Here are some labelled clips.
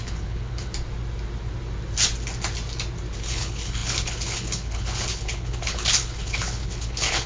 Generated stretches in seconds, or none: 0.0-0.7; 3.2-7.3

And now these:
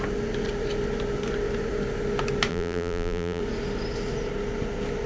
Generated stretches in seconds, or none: 2.5-3.4

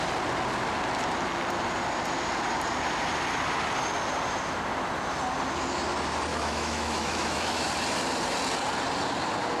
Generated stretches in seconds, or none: 6.3-7.7

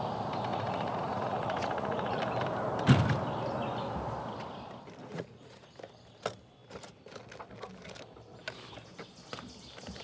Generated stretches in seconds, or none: 0.5-2.2; 5.0-5.7